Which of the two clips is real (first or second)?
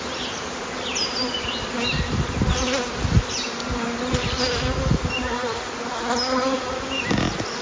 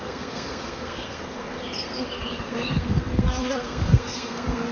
first